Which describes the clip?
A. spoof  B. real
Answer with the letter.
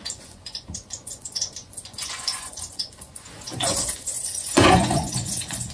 A